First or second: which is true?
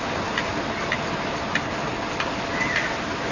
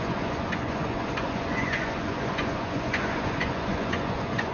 first